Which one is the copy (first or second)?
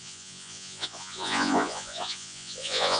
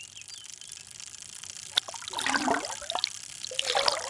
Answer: first